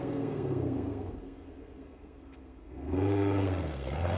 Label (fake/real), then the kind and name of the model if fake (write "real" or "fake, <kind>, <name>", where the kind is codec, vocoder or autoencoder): fake, codec, SNAC